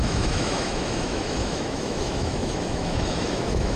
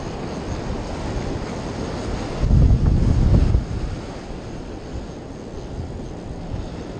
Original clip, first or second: second